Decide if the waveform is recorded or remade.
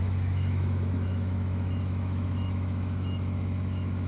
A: remade